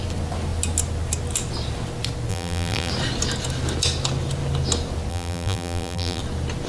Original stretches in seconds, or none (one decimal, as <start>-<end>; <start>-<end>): 0.0-2.3; 2.9-5.1; 6.2-6.7